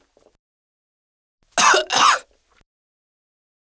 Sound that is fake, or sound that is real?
real